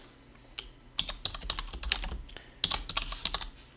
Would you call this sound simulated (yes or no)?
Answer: no